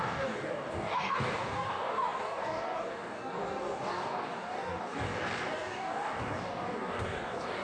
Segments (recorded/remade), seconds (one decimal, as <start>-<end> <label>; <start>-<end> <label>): 0.0-7.6 remade